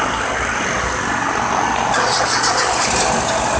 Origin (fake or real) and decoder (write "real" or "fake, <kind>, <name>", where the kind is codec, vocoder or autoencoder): real